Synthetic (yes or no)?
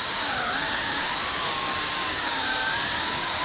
yes